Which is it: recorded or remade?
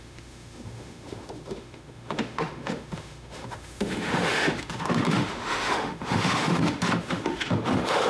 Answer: remade